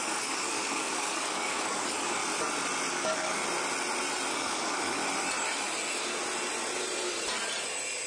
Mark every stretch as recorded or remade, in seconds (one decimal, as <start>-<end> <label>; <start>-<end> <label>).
0.0-2.2 remade; 2.2-2.9 recorded; 2.9-3.4 remade; 3.4-4.3 recorded; 4.3-5.0 remade; 5.0-8.1 recorded